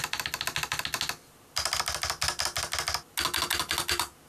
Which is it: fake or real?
real